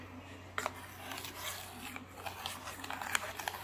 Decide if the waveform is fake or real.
real